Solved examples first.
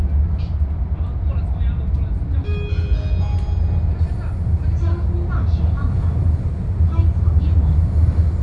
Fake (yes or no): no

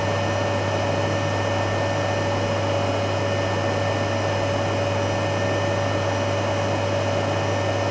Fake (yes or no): no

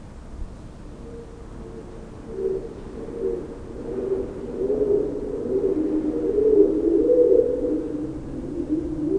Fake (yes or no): no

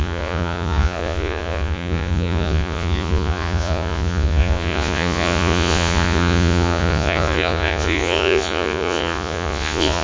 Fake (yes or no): yes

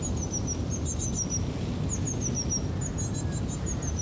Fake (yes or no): no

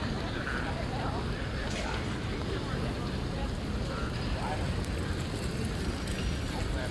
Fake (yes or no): yes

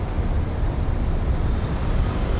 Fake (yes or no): no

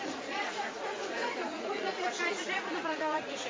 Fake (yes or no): yes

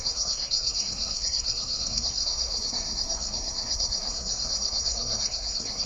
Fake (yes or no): yes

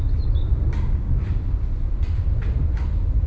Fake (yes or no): no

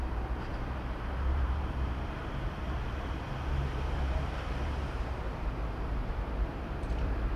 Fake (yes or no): yes